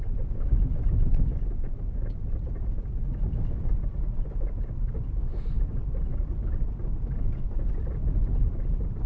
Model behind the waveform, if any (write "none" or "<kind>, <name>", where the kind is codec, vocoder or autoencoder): none